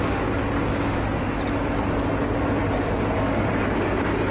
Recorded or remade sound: recorded